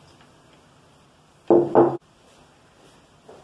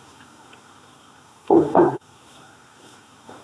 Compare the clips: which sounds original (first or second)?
first